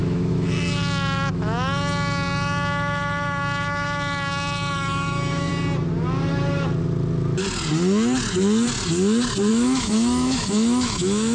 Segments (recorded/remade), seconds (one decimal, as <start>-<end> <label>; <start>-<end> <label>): 0.0-5.5 remade; 5.5-9.5 recorded; 9.5-11.3 remade